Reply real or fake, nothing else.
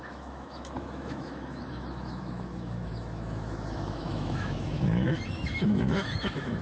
fake